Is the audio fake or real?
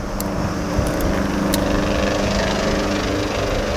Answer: real